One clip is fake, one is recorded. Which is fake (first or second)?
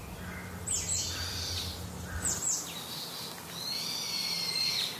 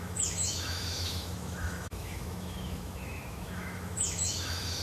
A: second